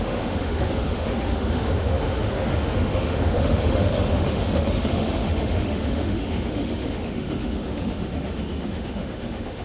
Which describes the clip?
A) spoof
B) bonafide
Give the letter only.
A